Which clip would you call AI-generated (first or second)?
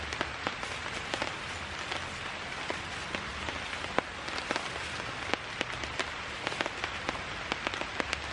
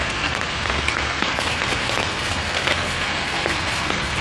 second